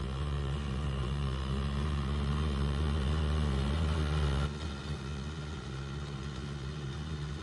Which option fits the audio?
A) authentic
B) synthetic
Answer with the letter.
B